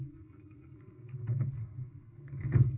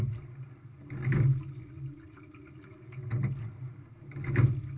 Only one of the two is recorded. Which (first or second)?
second